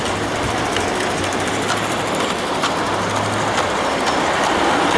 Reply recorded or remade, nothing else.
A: recorded